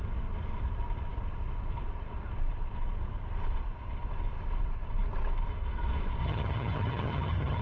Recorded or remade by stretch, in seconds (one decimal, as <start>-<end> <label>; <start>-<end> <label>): 0.0-6.2 recorded; 6.2-7.6 remade

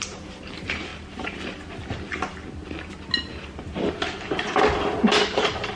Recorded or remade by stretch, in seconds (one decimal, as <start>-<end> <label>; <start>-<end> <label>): 0.0-0.9 remade; 0.9-3.9 recorded; 3.9-4.5 remade; 4.5-5.3 recorded; 5.3-5.8 remade

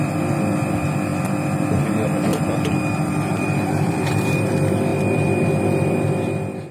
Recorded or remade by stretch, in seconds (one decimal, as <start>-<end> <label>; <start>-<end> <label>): 0.0-2.3 recorded; 2.3-4.5 remade; 4.5-6.7 recorded

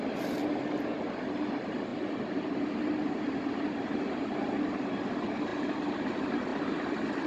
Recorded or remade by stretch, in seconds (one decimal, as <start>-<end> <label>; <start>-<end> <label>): 0.0-7.3 recorded

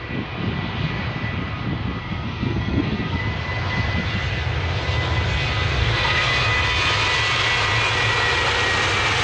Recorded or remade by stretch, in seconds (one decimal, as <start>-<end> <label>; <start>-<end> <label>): 0.0-2.0 recorded; 2.0-3.2 remade; 3.2-5.8 recorded; 5.8-6.3 remade; 6.3-9.2 recorded

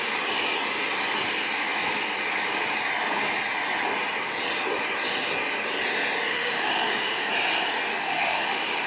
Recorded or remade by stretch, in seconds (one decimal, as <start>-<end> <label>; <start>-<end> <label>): 0.0-6.3 recorded; 6.3-7.3 remade; 7.3-7.9 recorded; 7.9-8.9 remade

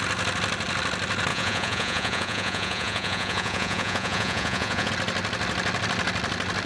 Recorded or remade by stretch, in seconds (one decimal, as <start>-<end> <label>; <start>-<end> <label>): 0.0-1.3 recorded; 1.3-4.9 remade; 4.9-6.7 recorded

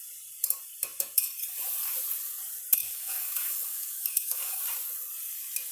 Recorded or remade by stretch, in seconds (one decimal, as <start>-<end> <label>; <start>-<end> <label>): 0.0-2.8 recorded; 2.8-4.6 remade; 4.6-5.7 recorded